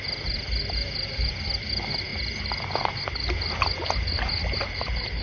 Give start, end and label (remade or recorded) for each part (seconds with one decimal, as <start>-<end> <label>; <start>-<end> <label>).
0.0-5.2 recorded